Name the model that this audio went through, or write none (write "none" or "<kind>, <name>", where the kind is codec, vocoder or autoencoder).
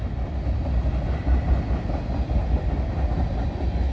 none